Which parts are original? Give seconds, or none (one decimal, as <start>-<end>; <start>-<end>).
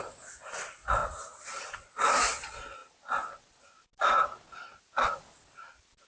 0.0-1.0; 1.7-6.1